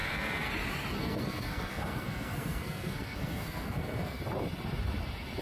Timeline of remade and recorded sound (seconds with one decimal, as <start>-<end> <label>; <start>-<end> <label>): 0.0-0.5 remade; 0.5-1.0 recorded; 1.0-4.2 remade; 4.2-5.4 recorded